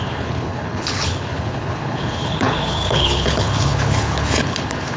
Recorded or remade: remade